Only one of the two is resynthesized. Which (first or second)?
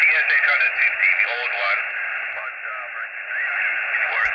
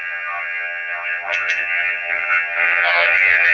second